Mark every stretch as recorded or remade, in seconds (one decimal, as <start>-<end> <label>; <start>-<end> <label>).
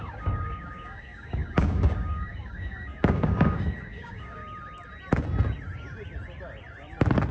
0.0-4.4 remade; 4.4-7.3 recorded